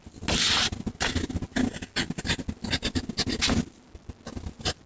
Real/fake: real